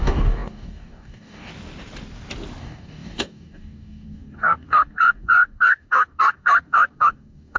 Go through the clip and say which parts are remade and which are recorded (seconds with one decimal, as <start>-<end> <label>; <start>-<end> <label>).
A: 0.0-1.5 remade; 1.5-2.6 recorded; 2.6-7.6 remade